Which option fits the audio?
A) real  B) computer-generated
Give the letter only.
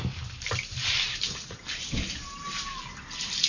A